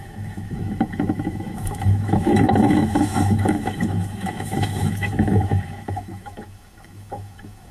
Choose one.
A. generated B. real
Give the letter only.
A